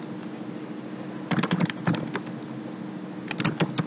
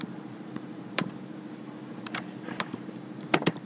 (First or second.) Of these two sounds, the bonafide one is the first